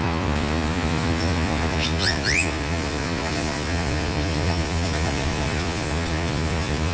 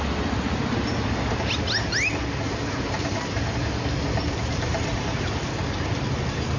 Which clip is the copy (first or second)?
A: first